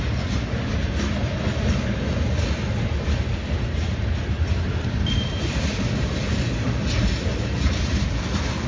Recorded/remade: recorded